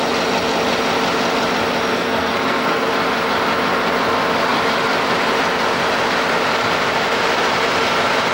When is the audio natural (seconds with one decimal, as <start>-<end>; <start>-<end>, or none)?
0.0-1.9; 2.9-8.3